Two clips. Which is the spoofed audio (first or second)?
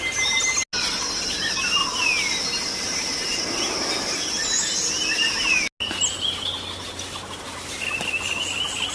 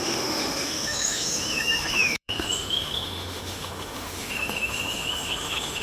second